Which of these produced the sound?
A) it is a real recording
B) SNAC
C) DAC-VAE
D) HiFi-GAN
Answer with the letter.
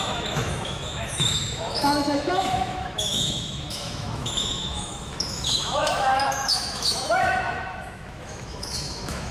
C